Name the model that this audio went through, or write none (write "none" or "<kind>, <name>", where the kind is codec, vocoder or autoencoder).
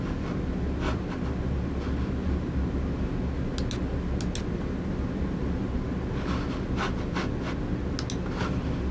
none